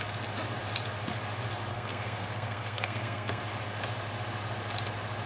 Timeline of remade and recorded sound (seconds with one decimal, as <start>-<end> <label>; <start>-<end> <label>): 0.0-1.7 recorded; 1.7-3.4 remade; 3.4-5.3 recorded